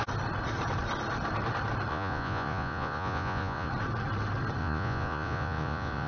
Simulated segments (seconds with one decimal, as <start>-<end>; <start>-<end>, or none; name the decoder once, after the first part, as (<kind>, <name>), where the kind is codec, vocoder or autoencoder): 1.9-3.7 (vocoder, Vocos); 4.6-6.1